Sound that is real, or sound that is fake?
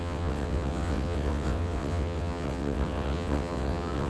fake